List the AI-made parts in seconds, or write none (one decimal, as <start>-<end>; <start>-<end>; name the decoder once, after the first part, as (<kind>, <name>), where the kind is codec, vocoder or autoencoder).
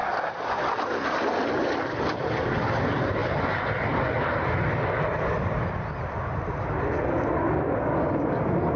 0.0-3.2 (vocoder, BigVGAN v2); 8.1-8.8